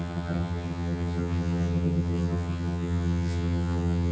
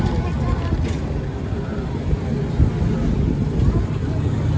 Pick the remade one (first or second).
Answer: first